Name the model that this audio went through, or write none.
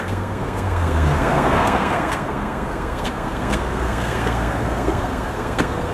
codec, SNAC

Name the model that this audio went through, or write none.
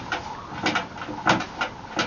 none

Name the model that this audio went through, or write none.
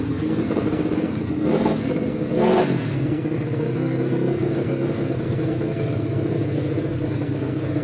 codec, SNAC